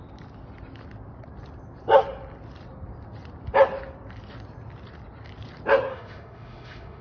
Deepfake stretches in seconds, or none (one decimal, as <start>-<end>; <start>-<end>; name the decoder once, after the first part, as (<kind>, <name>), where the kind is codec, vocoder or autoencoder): 5.9-7.0 (autoencoder, DAC-VAE)